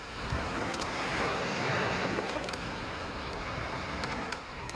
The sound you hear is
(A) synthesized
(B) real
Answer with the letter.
A